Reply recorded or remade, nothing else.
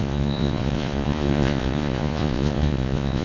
remade